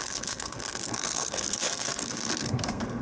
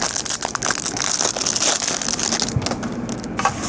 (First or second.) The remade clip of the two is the first